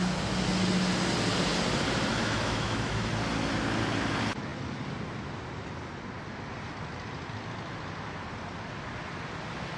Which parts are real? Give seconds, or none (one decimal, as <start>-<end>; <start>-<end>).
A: 0.0-2.1; 3.1-9.8